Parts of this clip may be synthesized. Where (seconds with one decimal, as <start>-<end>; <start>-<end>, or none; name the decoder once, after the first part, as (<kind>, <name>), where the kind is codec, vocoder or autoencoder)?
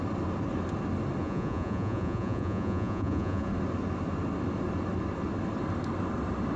1.2-3.5 (vocoder, Vocos)